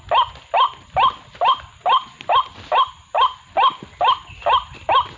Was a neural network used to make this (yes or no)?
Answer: no